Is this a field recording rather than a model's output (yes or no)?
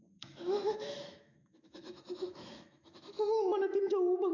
no